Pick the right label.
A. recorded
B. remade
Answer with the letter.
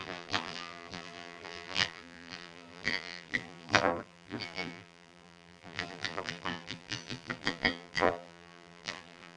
B